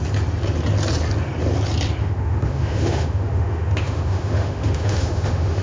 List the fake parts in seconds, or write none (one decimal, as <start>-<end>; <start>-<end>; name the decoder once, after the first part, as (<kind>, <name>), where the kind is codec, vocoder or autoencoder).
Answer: 2.0-5.6 (autoencoder, DAC-VAE)